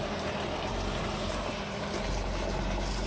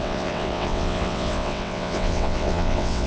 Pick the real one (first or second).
first